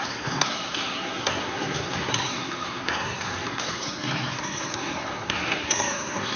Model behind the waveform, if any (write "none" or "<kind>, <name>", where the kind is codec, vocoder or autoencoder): codec, SNAC